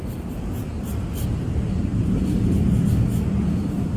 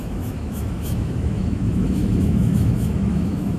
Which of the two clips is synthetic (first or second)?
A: second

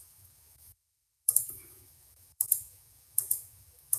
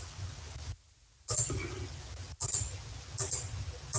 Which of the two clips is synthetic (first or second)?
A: first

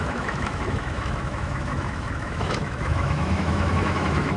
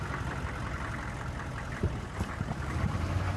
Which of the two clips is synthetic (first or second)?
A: first